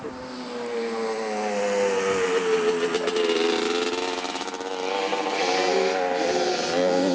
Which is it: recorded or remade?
recorded